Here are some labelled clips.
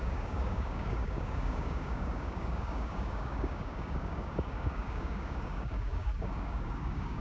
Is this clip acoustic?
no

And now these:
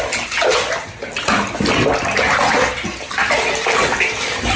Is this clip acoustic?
yes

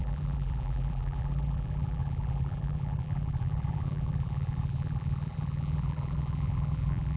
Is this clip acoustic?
no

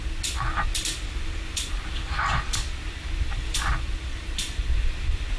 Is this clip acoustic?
yes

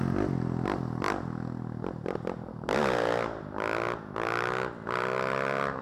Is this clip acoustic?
yes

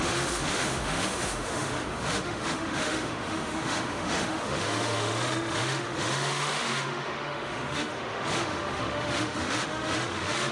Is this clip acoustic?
no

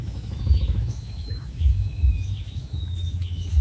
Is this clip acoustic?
no